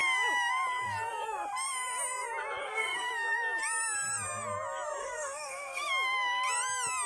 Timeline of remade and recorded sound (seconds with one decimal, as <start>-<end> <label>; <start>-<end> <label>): 0.0-2.6 recorded; 2.6-3.1 remade; 3.1-5.0 recorded; 5.0-5.9 remade; 5.9-7.1 recorded